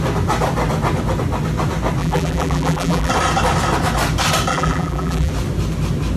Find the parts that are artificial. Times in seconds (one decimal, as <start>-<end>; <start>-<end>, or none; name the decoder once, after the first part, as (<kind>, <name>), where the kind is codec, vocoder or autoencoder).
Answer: 2.0-3.1 (vocoder, BigVGAN v2); 4.5-5.3

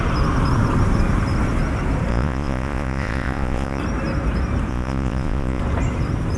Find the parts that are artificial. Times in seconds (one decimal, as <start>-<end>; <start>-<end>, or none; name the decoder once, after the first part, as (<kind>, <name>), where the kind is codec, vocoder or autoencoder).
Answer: 2.1-3.8 (vocoder, Vocos); 4.7-5.6

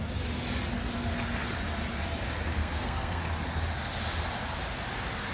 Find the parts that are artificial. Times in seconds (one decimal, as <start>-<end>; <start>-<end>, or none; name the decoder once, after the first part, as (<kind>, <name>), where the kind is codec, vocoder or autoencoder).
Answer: 2.6-3.2 (codec, SNAC)

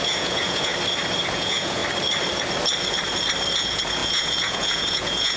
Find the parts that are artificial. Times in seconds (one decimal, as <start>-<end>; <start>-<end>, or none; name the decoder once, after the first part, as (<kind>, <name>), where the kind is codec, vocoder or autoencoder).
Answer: 0.0-0.7 (vocoder, Vocos); 1.3-1.8; 3.6-5.4

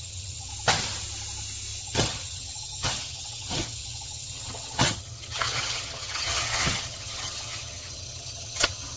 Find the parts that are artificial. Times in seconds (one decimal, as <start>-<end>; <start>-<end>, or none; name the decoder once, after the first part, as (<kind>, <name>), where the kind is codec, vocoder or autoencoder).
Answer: 0.0-0.5 (vocoder, HiFi-GAN); 1.8-9.0

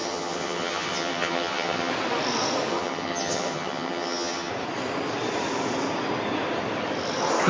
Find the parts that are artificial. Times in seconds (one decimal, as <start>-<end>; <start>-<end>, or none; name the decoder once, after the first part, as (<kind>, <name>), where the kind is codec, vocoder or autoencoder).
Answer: 0.0-1.9 (vocoder, HiFi-GAN); 2.7-4.5

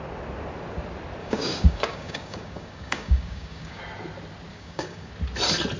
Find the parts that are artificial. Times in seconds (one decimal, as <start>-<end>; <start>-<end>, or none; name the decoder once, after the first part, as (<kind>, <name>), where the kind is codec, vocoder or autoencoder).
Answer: 1.2-3.8 (codec, DAC); 4.5-5.1

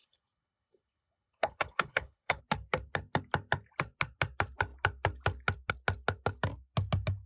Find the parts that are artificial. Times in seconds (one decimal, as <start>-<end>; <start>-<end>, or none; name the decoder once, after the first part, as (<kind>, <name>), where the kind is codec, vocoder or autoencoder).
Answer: 0.0-2.4 (codec, HILCodec)